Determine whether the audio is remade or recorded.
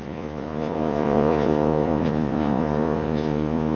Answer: remade